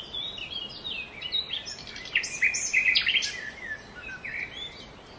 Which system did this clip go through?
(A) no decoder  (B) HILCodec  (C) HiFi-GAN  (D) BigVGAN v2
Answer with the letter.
A